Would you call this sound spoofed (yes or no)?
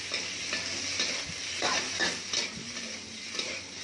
no